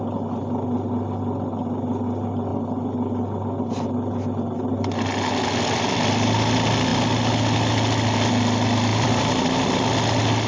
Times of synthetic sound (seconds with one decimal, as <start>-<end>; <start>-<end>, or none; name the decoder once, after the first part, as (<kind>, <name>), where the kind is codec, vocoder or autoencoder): 8.9-9.5 (vocoder, BigVGAN v2)